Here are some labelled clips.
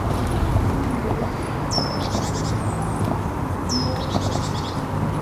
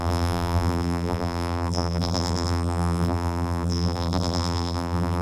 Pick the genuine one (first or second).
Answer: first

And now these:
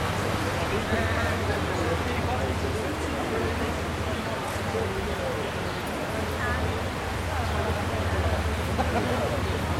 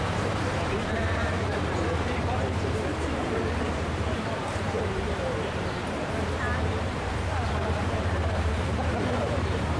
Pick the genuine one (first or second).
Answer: first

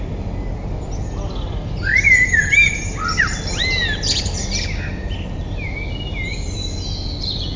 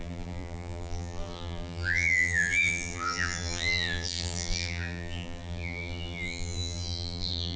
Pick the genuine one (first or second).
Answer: first